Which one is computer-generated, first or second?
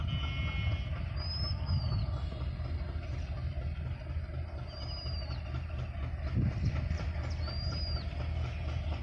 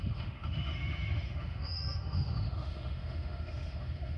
second